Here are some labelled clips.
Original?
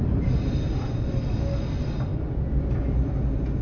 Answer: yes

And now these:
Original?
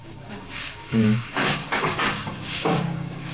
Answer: no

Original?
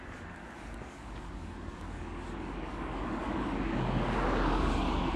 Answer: no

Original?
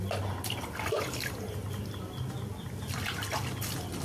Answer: yes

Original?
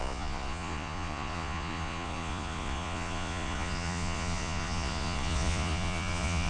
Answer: no